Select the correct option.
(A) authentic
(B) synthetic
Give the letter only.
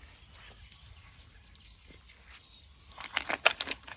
A